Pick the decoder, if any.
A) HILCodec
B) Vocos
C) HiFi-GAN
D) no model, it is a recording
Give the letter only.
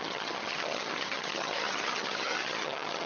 C